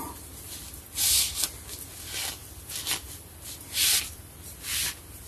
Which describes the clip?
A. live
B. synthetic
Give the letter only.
A